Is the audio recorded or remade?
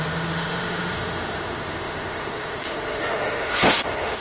remade